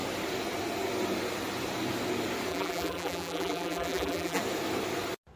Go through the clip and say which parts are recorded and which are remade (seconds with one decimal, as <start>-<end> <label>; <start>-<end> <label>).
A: 0.0-2.5 recorded; 2.5-4.4 remade; 4.4-5.4 recorded